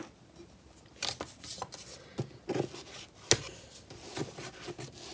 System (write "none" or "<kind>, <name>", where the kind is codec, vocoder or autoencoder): none